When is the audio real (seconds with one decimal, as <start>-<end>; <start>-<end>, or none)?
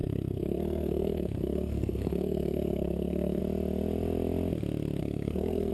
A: 3.4-5.0